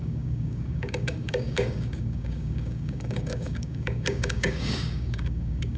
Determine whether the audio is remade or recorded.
remade